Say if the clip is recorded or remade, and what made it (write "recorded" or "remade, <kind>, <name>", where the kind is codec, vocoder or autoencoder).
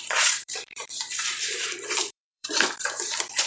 remade, vocoder, BigVGAN v2